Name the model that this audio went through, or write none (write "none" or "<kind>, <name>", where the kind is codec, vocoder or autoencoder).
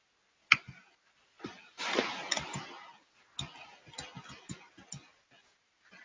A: none